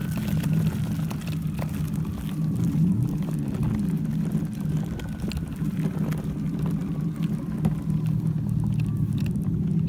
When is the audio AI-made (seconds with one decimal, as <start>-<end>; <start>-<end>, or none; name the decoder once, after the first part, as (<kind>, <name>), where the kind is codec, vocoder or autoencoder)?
none